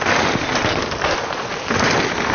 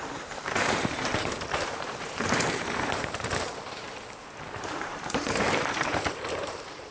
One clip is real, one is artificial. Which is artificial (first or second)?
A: second